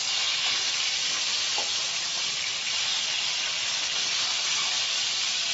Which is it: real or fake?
real